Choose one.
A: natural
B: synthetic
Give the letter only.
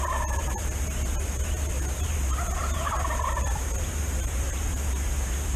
B